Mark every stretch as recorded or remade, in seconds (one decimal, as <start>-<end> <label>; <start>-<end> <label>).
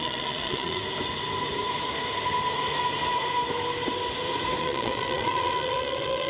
0.0-0.8 remade; 0.8-4.6 recorded; 4.6-6.3 remade